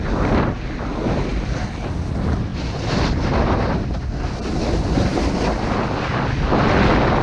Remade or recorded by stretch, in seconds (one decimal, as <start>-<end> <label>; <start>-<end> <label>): 0.0-7.2 recorded